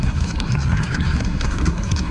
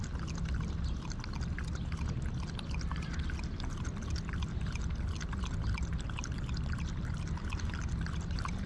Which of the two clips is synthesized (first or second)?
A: first